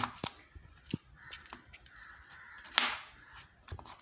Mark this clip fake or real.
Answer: real